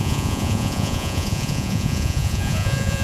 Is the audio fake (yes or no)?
yes